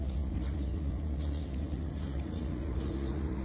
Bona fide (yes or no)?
no